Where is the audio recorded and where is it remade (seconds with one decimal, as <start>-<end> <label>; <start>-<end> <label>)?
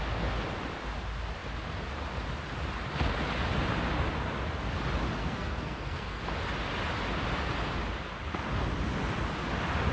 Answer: 0.0-5.2 recorded; 5.2-6.2 remade; 6.2-9.9 recorded